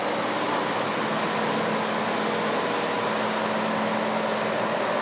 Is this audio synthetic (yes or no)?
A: no